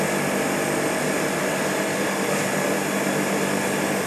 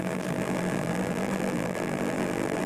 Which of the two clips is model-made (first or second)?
second